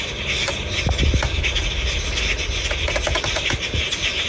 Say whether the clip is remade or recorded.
recorded